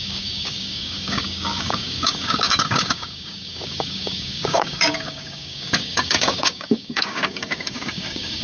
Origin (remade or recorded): remade